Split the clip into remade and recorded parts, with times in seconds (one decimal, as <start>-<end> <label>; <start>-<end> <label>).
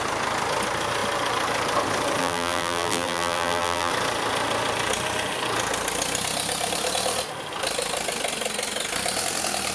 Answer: 0.0-2.2 recorded; 2.2-3.9 remade; 3.9-9.7 recorded